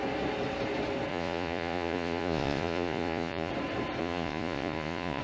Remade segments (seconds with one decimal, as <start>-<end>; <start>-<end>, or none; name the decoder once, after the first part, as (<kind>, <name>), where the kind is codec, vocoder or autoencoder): 1.1-3.5 (vocoder, Vocos); 4.0-5.2